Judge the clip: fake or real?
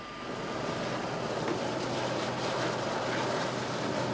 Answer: real